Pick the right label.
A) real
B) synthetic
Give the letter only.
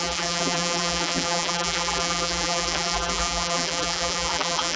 B